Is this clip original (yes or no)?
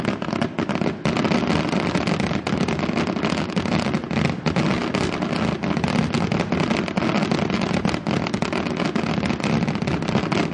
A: yes